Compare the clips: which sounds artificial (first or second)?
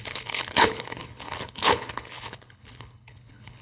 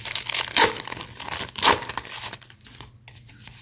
first